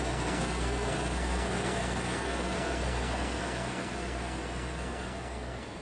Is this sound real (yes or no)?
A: no